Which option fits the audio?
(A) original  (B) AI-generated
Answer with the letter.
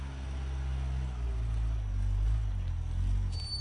A